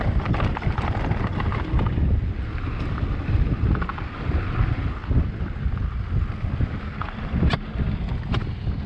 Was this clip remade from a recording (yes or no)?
yes